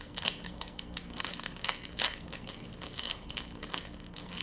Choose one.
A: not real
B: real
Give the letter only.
A